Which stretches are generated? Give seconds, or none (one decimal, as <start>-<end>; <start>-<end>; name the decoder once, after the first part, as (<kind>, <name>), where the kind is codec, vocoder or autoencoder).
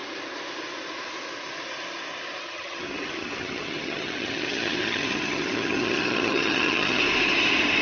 2.4-7.0 (vocoder, HiFi-GAN)